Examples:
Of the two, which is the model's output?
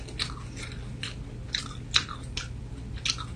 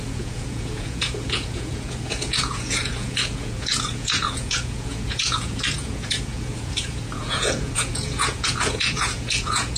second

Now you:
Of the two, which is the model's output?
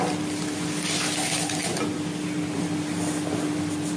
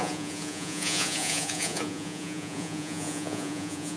second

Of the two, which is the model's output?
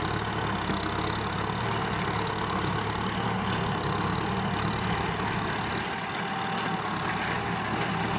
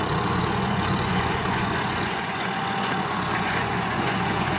second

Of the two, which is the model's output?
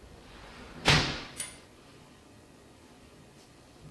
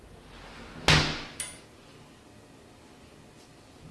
first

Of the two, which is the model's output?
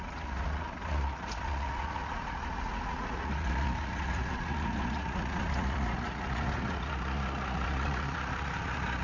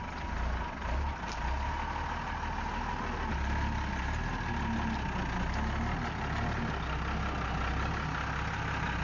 first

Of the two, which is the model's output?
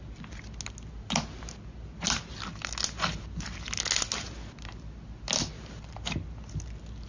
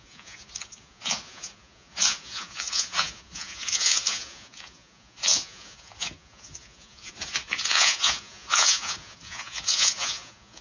second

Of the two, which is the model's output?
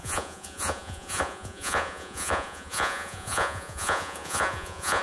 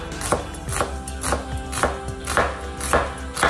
first